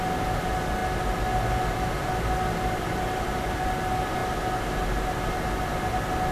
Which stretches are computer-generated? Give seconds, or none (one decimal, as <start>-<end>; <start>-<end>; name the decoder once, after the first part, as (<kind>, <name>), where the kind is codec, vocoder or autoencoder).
none